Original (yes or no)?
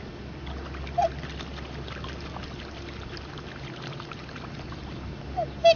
yes